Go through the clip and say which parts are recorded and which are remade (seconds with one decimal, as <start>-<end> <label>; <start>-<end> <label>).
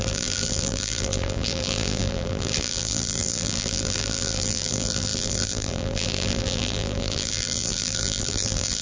0.0-8.8 remade